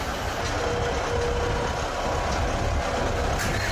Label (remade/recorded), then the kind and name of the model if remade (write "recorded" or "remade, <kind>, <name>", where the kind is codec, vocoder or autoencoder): recorded